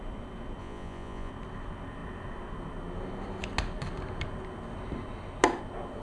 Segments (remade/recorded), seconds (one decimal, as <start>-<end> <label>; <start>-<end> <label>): 0.0-0.6 recorded; 0.6-1.3 remade; 1.3-6.0 recorded